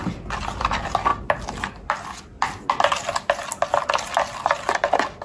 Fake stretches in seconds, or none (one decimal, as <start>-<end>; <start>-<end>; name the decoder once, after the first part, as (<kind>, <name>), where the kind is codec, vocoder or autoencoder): none